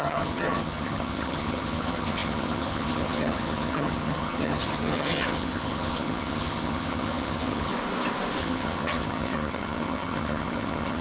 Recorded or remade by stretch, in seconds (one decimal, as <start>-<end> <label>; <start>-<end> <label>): 0.0-7.7 remade; 7.7-8.4 recorded; 8.4-11.0 remade